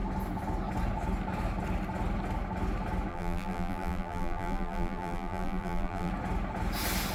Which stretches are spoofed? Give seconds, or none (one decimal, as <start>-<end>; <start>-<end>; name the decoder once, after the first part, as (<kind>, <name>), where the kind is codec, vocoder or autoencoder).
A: 3.1-6.1 (vocoder, BigVGAN v2)